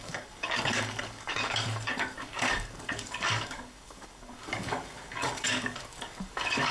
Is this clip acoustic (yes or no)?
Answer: no